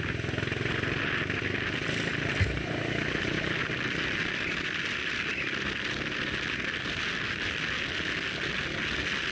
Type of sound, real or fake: real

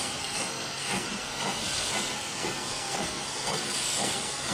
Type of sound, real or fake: fake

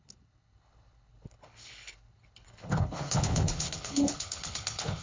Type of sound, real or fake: fake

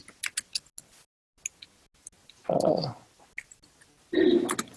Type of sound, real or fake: real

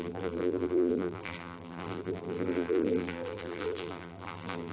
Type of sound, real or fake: fake